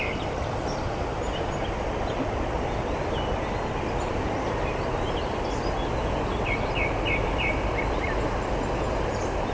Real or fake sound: real